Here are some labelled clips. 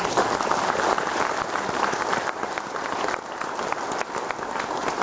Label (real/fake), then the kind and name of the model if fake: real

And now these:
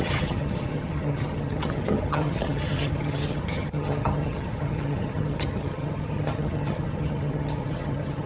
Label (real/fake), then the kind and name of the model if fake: fake, vocoder, HiFi-GAN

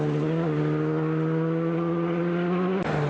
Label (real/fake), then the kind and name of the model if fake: real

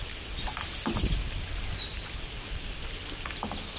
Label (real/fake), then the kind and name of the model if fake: real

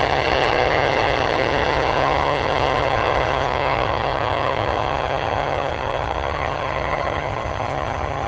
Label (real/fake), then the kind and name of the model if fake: fake, vocoder, HiFi-GAN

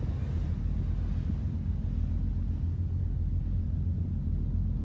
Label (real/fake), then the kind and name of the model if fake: real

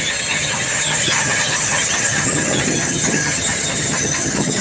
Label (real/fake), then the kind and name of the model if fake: fake, vocoder, HiFi-GAN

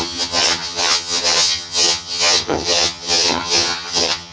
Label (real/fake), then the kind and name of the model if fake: fake, vocoder, HiFi-GAN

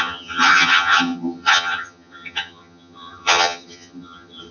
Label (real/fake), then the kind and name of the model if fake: fake, vocoder, HiFi-GAN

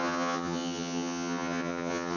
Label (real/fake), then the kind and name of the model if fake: fake, vocoder, HiFi-GAN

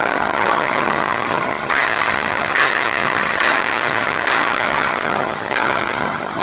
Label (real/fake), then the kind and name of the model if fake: fake, vocoder, HiFi-GAN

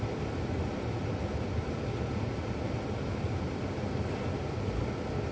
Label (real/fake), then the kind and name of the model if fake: real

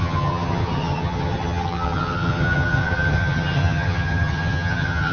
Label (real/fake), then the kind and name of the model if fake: fake, vocoder, HiFi-GAN